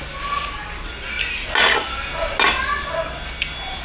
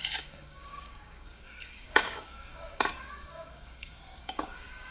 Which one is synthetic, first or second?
second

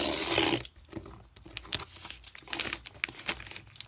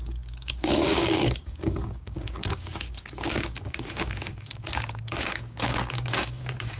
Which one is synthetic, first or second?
second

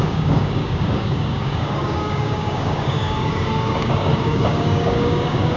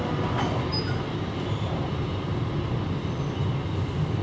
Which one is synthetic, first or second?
first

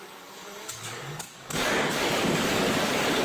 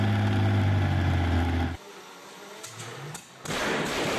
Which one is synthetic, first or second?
first